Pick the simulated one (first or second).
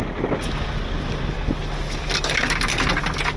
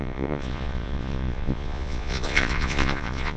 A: second